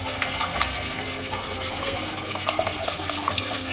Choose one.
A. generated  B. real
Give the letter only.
A